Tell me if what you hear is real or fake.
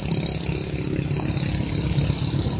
real